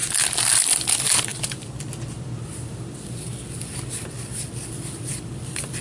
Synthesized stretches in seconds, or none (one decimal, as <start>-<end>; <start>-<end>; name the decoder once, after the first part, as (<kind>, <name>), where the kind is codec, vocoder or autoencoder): 0.5-3.3 (vocoder, BigVGAN v2); 4.6-5.8